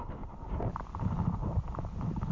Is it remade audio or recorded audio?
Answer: remade